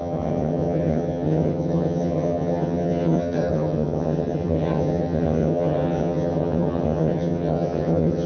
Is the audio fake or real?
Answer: fake